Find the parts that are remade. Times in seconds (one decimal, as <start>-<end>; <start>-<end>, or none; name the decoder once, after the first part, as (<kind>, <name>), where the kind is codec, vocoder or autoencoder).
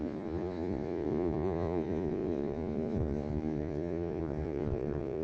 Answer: 0.0-5.2 (vocoder, Vocos)